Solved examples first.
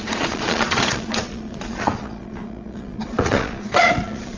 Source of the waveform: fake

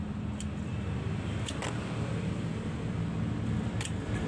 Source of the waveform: real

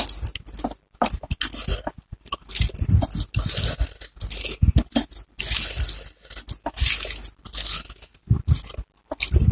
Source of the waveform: real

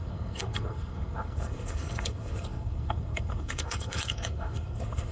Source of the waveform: fake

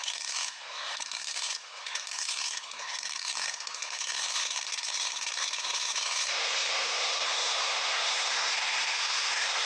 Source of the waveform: fake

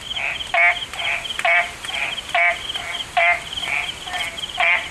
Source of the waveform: real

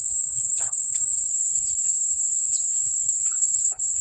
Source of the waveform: fake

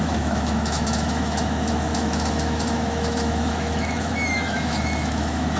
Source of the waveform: fake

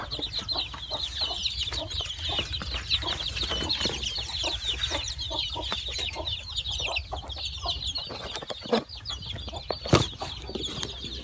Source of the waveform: real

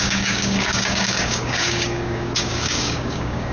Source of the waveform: fake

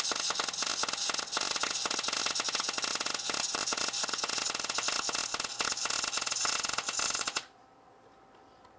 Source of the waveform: real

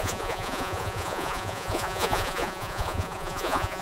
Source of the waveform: fake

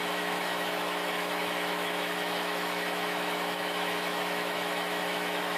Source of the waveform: fake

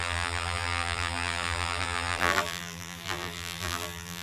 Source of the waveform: fake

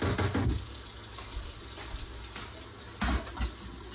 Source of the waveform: real